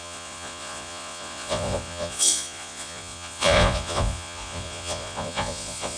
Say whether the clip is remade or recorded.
remade